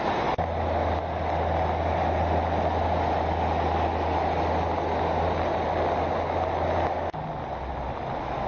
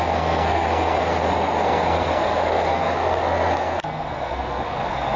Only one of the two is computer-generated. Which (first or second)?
second